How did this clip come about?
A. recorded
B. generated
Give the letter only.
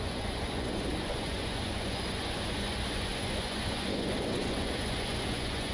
B